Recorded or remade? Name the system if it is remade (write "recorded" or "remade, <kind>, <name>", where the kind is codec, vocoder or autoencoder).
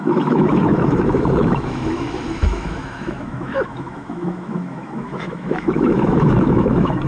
remade, autoencoder, DAC-VAE